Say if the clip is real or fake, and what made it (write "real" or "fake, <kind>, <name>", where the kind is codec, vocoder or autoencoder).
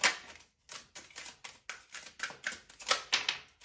real